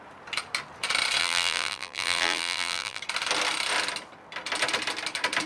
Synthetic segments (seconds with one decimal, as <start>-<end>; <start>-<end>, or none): 1.2-3.0